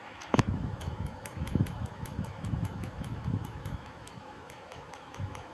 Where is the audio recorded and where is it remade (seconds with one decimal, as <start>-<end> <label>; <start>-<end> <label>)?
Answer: 0.0-5.5 remade

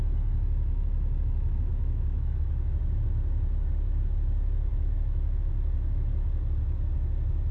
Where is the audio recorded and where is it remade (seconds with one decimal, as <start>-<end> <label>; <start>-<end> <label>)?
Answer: 0.0-1.7 recorded; 1.7-2.8 remade; 2.8-4.7 recorded; 4.7-5.5 remade; 5.5-7.5 recorded